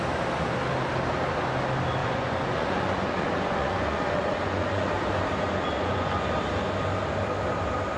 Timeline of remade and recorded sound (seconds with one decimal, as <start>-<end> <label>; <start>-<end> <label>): 0.0-2.0 recorded; 2.0-4.9 remade; 4.9-5.5 recorded; 5.5-6.3 remade; 6.3-8.0 recorded